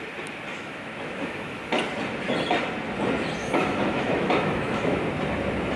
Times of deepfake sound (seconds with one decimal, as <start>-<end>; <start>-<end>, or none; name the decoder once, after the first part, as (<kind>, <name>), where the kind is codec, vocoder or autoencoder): 0.5-1.6 (autoencoder, DAC-VAE); 3.4-5.0